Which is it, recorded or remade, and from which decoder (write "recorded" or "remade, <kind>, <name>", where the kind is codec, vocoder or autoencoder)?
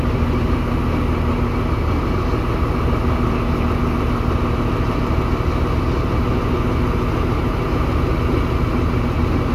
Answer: recorded